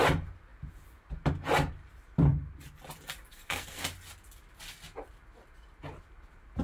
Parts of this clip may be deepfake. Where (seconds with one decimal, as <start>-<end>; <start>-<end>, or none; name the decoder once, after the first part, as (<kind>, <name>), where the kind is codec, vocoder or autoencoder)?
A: 3.3-3.8 (codec, SNAC)